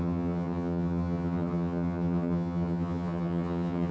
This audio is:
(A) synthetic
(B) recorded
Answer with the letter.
A